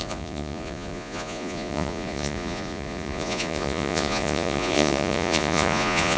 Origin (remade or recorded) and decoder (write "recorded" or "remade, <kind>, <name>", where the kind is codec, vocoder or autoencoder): remade, vocoder, Vocos